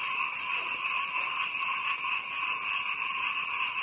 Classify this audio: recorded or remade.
recorded